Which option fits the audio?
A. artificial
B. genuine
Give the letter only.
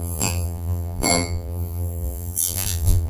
A